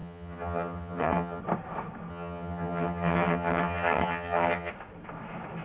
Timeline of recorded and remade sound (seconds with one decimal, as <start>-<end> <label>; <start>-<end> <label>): 0.0-1.4 remade; 1.4-2.1 recorded; 2.1-4.7 remade; 4.7-5.6 recorded